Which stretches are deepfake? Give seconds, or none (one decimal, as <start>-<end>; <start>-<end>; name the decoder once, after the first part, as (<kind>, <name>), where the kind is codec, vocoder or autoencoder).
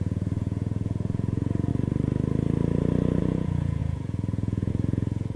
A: 0.0-1.7 (vocoder, Vocos); 3.2-5.4